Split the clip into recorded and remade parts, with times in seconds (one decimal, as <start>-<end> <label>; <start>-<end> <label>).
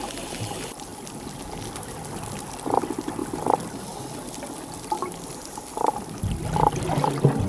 0.0-7.5 recorded